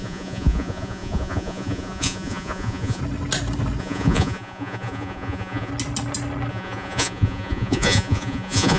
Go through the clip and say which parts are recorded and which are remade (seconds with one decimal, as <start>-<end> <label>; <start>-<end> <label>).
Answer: 0.0-3.0 remade; 3.0-3.8 recorded; 3.8-5.7 remade; 5.7-6.5 recorded; 6.5-8.8 remade